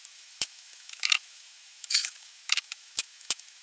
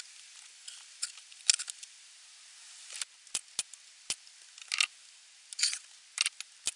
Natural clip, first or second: second